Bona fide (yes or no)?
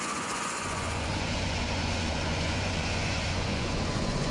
no